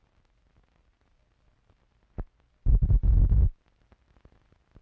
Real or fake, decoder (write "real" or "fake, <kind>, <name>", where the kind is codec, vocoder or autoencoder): real